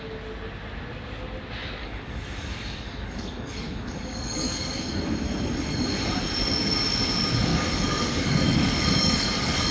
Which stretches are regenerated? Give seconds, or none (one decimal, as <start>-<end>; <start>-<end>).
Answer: 1.8-5.0; 7.5-9.7